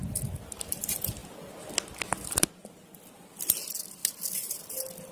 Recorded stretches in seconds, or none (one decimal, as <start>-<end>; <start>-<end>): 0.0-5.1